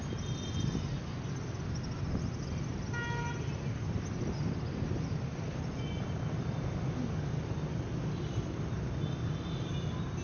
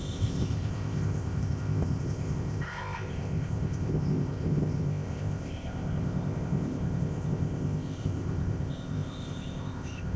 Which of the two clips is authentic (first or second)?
first